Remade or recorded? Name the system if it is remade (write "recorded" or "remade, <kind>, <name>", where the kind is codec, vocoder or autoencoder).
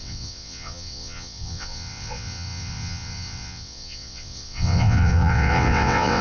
remade, vocoder, WaveNeXt